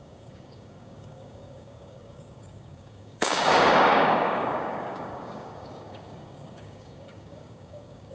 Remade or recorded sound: remade